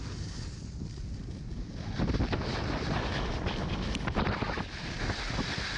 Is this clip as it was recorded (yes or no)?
yes